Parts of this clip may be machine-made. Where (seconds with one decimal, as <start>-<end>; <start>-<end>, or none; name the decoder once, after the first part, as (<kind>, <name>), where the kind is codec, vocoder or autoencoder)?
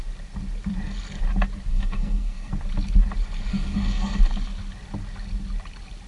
1.7-2.5 (codec, SNAC); 3.5-4.2